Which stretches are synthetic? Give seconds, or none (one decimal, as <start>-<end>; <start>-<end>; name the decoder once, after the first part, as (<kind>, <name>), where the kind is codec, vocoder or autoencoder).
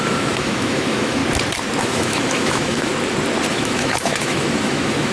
0.0-1.2 (autoencoder, DAC-VAE); 1.8-2.9; 3.5-5.1